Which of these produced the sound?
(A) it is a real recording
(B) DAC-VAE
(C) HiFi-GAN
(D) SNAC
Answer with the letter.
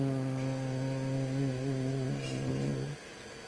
A